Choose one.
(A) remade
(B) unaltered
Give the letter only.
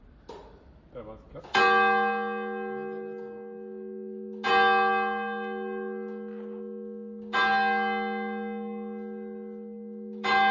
B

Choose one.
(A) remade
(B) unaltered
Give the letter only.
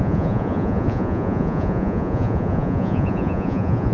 A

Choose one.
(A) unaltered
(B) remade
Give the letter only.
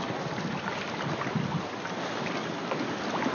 A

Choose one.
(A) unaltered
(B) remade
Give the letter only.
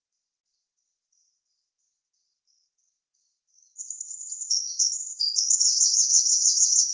B